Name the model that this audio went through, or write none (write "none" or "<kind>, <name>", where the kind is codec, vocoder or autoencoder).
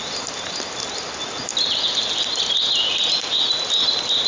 none